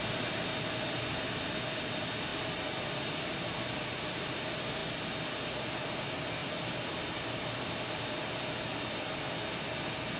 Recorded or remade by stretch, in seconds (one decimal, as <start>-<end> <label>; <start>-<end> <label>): 0.0-10.2 recorded